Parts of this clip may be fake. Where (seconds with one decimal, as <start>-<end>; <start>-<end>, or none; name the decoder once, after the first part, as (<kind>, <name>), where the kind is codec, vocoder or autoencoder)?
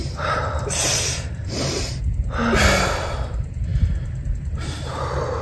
0.0-1.9 (vocoder, BigVGAN v2); 3.7-5.0